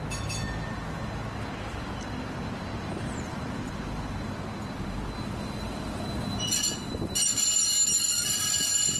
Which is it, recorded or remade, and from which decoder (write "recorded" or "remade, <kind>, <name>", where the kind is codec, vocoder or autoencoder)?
recorded